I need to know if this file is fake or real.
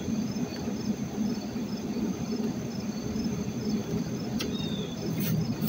fake